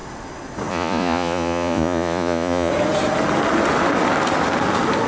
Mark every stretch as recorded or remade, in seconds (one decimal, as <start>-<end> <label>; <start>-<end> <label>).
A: 0.0-0.7 recorded; 0.7-2.7 remade; 2.7-5.1 recorded